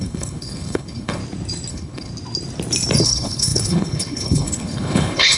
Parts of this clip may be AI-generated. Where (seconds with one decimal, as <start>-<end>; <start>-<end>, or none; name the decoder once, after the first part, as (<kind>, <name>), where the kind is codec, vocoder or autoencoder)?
0.0-1.2 (codec, HILCodec); 1.7-2.1; 3.0-5.4